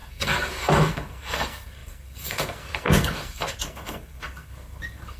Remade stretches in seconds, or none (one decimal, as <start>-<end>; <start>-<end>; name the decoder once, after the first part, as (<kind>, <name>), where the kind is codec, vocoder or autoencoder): 0.0-5.2 (codec, SNAC)

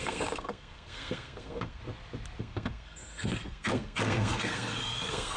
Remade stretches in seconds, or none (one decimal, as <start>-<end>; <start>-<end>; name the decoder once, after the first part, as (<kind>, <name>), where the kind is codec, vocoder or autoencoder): 0.0-1.8 (codec, SNAC); 2.4-5.4

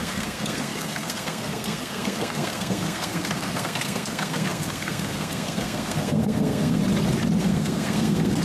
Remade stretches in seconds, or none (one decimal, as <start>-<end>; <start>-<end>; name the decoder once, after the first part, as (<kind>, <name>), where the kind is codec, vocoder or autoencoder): 0.0-6.8 (codec, SNAC); 7.4-8.4

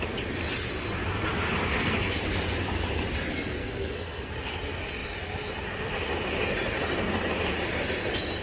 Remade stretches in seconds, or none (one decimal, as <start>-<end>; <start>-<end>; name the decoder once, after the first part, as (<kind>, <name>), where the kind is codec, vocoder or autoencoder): 1.7-2.2 (codec, SNAC); 3.6-4.3

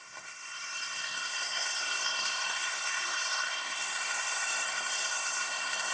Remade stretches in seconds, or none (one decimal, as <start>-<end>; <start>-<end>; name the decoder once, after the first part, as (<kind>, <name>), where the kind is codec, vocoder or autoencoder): 0.0-5.9 (codec, SNAC)

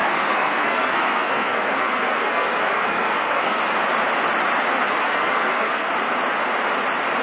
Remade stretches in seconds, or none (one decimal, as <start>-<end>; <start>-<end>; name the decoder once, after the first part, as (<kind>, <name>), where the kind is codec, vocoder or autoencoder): 0.0-3.6 (codec, SNAC); 5.0-5.9